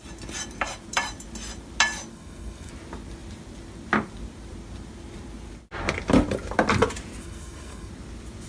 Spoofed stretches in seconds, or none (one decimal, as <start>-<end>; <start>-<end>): 2.1-2.7; 7.2-7.9